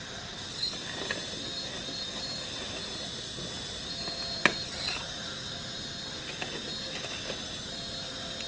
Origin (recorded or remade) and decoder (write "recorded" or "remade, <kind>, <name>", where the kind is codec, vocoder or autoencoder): recorded